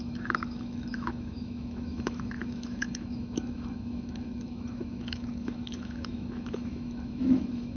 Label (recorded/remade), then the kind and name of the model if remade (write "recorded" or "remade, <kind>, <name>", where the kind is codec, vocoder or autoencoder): remade, autoencoder, DAC-VAE